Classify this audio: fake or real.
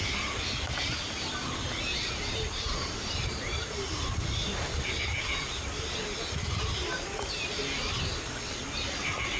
real